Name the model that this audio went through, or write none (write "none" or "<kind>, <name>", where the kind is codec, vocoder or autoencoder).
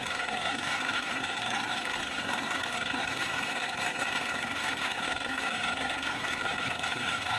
codec, SNAC